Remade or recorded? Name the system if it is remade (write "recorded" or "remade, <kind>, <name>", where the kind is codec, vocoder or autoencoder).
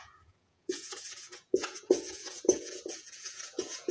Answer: remade, vocoder, Vocos